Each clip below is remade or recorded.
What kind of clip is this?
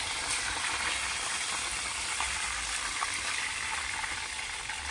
recorded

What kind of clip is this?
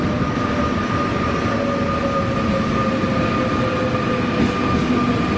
recorded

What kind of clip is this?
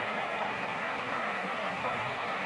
remade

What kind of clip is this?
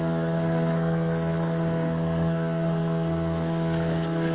remade